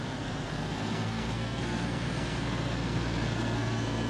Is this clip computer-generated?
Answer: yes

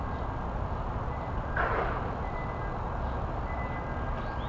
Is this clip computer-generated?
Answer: no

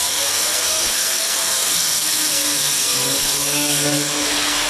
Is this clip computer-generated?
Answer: yes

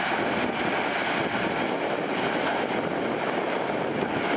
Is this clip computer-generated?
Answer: no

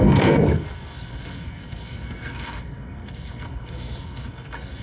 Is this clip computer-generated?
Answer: yes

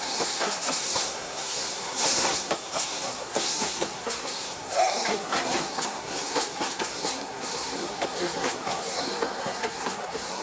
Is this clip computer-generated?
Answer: yes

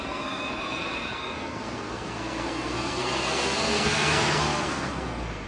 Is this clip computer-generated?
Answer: yes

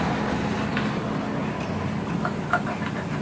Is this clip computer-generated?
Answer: no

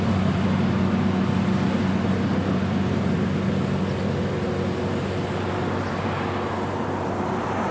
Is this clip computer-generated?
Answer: no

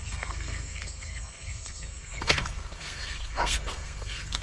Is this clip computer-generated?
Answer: yes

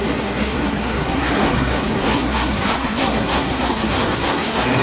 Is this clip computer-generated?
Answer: yes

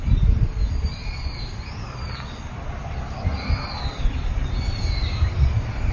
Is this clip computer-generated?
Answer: no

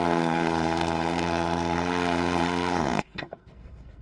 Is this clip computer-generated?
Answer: yes